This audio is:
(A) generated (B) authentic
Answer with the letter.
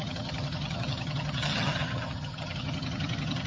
A